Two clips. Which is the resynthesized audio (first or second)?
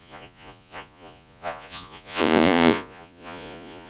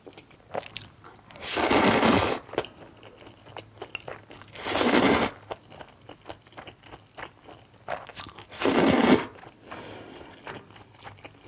first